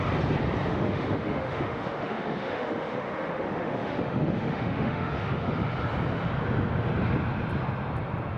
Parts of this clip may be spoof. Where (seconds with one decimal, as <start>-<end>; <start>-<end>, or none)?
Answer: 0.7-5.5